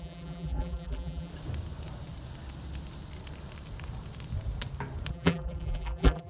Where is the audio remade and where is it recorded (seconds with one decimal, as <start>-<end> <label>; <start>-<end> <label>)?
0.0-1.3 remade; 1.3-5.1 recorded; 5.1-6.3 remade